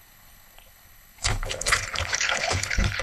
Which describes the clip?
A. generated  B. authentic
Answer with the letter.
A